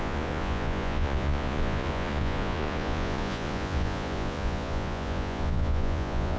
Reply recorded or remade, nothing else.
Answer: remade